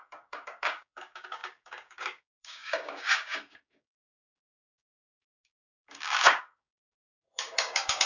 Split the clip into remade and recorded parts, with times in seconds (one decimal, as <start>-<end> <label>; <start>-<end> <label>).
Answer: 0.0-8.1 remade